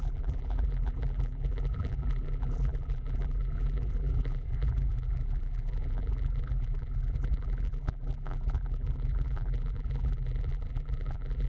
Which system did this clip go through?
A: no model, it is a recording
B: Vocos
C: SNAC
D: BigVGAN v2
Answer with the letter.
D